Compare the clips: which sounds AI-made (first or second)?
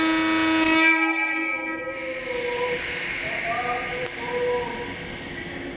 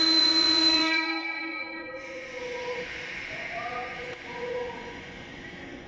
second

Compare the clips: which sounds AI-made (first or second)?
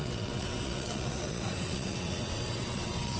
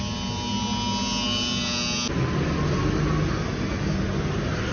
first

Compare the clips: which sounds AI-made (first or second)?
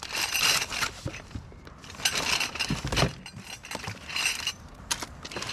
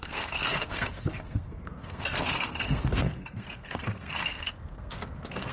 second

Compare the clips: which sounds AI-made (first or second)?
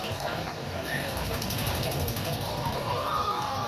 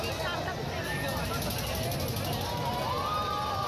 first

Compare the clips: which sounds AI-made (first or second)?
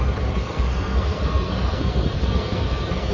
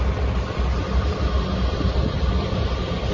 first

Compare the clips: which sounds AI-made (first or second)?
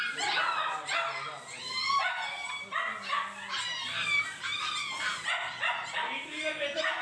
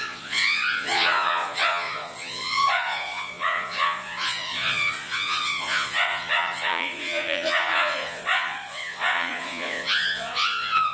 second